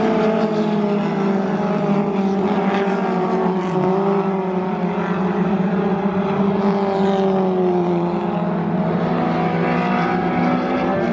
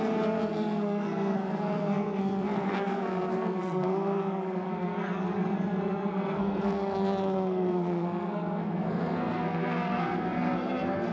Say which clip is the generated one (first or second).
second